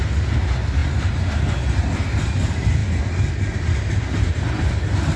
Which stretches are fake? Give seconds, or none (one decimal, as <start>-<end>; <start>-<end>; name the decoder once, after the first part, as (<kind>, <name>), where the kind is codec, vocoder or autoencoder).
none